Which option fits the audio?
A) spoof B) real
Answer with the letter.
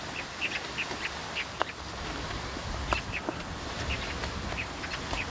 B